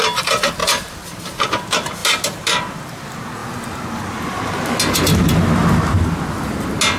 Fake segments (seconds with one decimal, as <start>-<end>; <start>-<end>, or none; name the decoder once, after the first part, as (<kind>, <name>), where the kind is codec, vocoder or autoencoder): 2.0-2.6 (vocoder, BigVGAN v2)